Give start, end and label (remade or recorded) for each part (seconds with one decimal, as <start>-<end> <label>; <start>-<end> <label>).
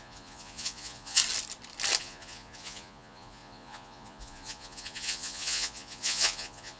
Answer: 0.0-1.2 remade; 1.2-2.0 recorded; 2.0-6.8 remade